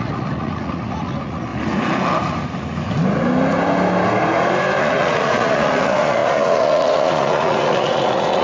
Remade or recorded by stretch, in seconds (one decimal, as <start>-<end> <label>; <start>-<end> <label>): 0.0-1.5 remade; 1.5-4.8 recorded; 4.8-8.4 remade